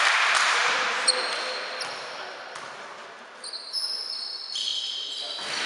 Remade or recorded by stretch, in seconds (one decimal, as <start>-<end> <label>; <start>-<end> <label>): 0.0-5.7 recorded